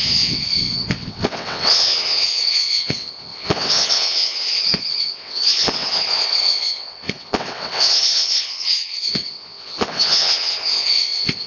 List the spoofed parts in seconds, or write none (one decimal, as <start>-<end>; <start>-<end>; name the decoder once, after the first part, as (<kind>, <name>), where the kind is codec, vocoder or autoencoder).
0.0-11.5 (vocoder, WaveNeXt)